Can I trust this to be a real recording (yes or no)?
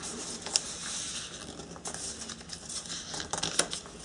yes